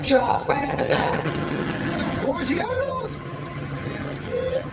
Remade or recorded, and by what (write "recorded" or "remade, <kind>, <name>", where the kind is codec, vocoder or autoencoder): remade, vocoder, HiFi-GAN